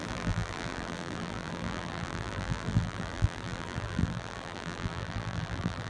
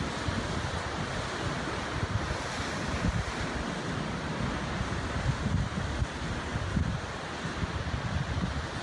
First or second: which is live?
second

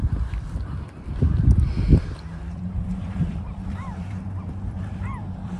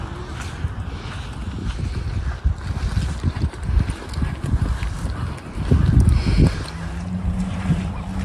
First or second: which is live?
second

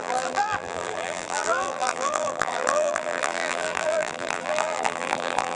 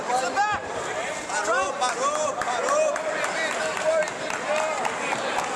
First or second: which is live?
second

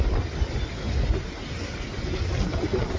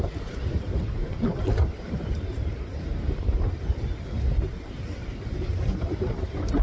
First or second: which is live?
first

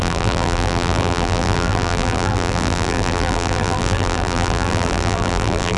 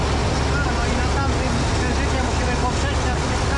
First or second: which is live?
second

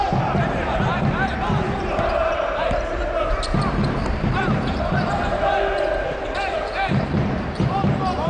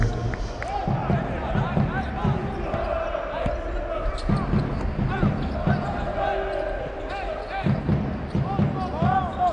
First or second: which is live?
second